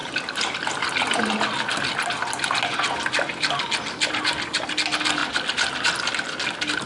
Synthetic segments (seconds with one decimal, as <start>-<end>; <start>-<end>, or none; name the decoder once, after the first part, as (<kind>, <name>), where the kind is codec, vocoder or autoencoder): none